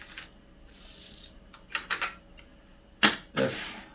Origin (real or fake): real